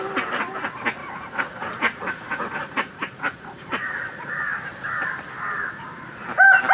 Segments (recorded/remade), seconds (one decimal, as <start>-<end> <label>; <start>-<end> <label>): 0.0-1.0 recorded; 1.0-4.4 remade; 4.4-6.7 recorded